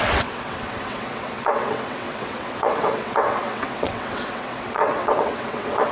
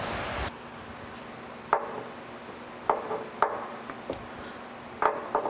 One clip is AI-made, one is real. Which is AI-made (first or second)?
first